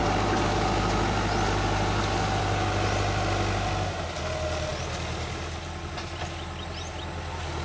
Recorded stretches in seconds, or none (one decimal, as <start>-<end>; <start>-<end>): 0.0-7.6